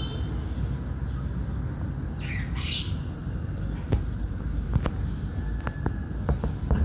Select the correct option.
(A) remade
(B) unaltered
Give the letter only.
B